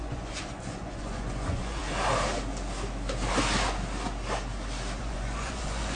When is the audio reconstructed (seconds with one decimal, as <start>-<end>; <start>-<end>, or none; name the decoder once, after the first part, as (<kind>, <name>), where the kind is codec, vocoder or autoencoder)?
0.0-1.8 (vocoder, Vocos); 5.0-5.9